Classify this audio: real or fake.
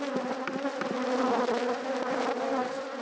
real